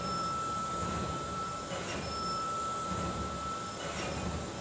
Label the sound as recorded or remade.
remade